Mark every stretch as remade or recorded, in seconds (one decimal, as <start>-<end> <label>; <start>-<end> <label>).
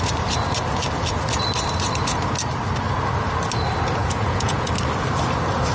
0.0-4.0 recorded; 4.0-4.7 remade; 4.7-5.7 recorded